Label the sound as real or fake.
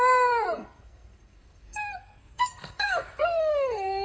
fake